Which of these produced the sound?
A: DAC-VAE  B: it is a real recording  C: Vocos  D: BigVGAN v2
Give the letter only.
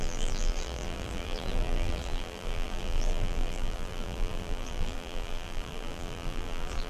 D